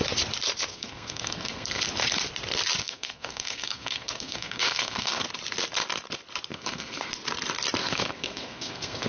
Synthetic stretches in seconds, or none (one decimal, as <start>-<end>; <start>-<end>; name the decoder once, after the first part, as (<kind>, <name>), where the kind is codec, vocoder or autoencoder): 0.7-1.8 (codec, SNAC); 2.8-5.2; 6.5-7.1; 7.8-9.1